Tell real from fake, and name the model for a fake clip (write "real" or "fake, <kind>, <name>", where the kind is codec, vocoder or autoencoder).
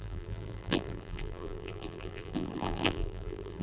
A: fake, vocoder, BigVGAN v2